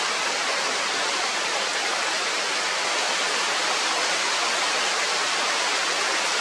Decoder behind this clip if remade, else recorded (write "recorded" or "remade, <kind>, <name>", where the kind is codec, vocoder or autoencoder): recorded